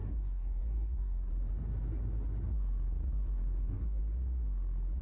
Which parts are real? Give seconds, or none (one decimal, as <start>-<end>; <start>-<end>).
1.3-3.6; 4.0-5.0